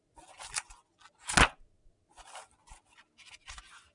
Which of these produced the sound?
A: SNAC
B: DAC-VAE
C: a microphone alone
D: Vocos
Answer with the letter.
C